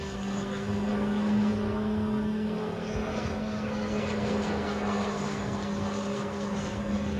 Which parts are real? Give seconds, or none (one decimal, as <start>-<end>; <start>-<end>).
none